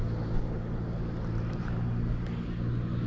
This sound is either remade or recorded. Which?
recorded